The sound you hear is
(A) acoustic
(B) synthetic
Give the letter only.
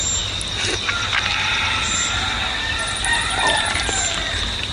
A